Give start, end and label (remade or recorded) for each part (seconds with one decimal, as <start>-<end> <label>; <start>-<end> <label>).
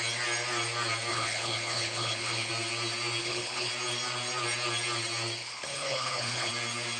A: 0.0-1.1 recorded; 1.1-2.5 remade; 2.5-3.2 recorded; 3.2-3.7 remade; 3.7-5.4 recorded; 5.4-6.5 remade; 6.5-7.0 recorded